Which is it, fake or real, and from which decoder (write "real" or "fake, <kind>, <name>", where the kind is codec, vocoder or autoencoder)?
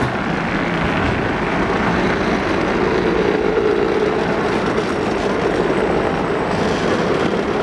real